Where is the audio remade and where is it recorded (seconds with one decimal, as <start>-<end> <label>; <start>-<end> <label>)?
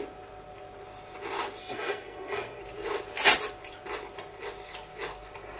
0.0-1.6 recorded; 1.6-2.6 remade; 2.6-5.6 recorded